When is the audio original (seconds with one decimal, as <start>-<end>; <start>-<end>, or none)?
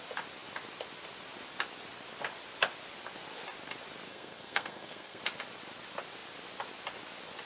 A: 0.0-4.1; 5.2-7.5